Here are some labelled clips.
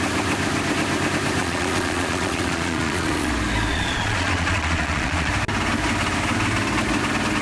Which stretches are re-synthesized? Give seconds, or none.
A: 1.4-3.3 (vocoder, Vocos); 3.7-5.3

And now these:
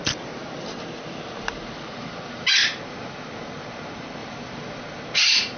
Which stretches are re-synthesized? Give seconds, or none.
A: 4.2-4.8 (vocoder, BigVGAN v2)

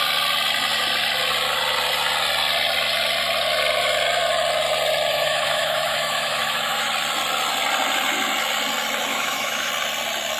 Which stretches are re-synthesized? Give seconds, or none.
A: 5.1-6.9 (autoencoder, DAC-VAE); 9.1-9.7

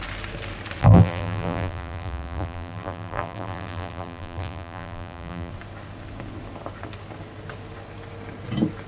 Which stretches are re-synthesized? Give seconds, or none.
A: 0.8-5.5 (vocoder, BigVGAN v2)